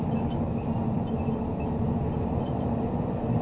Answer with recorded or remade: recorded